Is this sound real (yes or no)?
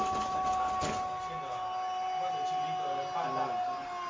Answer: yes